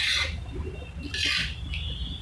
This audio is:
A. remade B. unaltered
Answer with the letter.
B